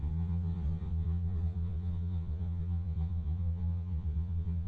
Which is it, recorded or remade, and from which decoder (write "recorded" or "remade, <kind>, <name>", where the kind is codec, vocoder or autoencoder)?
remade, vocoder, Vocos